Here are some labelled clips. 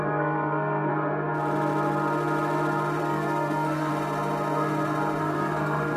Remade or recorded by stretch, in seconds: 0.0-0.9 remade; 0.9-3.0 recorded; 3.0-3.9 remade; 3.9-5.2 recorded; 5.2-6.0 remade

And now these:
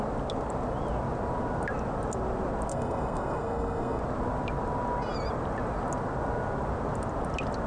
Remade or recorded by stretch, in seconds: 0.0-2.7 recorded; 2.7-4.0 remade; 4.0-7.7 recorded

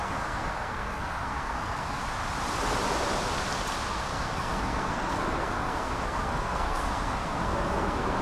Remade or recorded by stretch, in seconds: 0.0-2.0 remade; 2.0-3.9 recorded; 3.9-8.2 remade

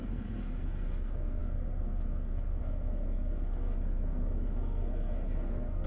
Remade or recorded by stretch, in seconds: 0.0-5.9 remade

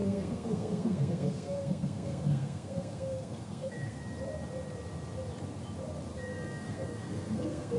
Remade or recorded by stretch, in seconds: 0.0-4.0 remade; 4.0-6.1 recorded; 6.1-7.8 remade

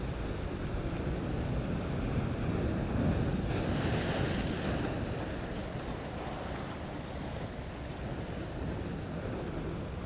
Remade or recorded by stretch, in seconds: 0.0-10.1 recorded

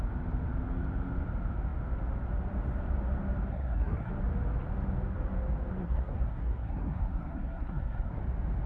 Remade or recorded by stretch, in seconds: 0.0-3.5 recorded; 3.5-4.1 remade; 4.1-5.8 recorded; 5.8-8.2 remade; 8.2-8.7 recorded